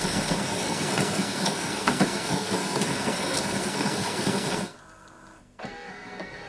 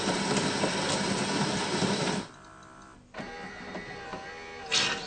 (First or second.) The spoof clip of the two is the first